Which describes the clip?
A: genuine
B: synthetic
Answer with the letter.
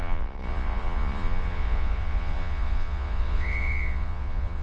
B